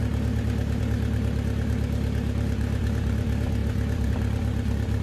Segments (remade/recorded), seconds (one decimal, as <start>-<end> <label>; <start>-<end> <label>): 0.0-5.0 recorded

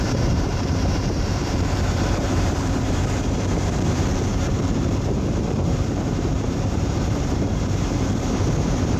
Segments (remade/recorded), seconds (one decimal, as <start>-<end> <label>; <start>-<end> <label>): 0.0-9.0 remade

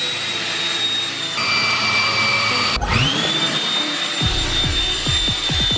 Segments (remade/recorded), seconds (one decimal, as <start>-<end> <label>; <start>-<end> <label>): 0.0-2.3 recorded; 2.3-5.8 remade